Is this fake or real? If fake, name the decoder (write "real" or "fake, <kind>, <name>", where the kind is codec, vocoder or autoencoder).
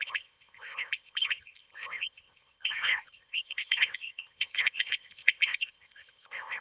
fake, codec, ZipCodec